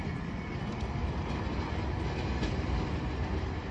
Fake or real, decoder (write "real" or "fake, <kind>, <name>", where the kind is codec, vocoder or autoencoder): real